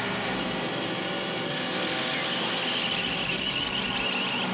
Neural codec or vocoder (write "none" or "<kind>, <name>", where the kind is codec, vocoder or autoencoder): none